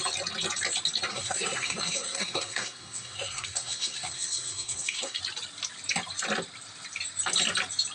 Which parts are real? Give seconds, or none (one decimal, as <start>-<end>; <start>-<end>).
0.0-1.1; 5.2-7.9

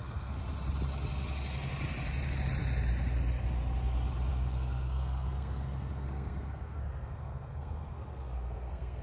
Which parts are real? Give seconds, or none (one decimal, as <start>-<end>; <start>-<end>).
0.4-4.3

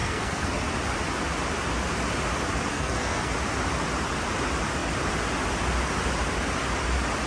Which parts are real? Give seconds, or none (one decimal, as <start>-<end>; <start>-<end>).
0.5-2.7; 3.3-7.3

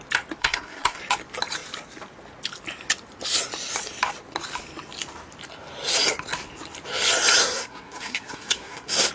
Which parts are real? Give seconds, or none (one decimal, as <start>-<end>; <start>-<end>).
0.0-0.4; 1.0-7.4

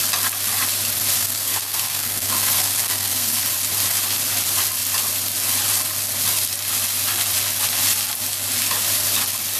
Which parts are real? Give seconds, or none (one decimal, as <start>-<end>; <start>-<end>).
0.0-1.2; 3.5-9.6